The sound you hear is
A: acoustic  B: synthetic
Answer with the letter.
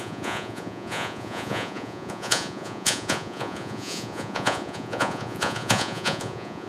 B